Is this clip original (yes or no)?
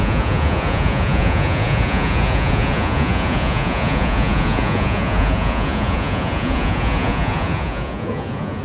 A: no